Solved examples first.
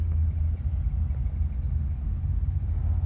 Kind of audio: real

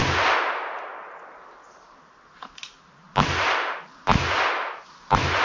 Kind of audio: real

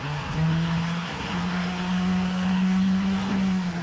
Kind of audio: fake